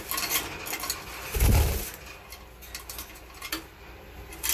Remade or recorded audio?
recorded